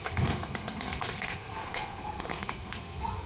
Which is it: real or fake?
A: fake